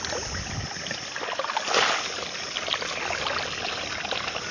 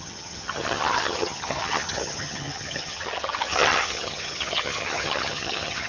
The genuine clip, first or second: first